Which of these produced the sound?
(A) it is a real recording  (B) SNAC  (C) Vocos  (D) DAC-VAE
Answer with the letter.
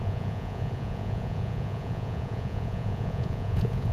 C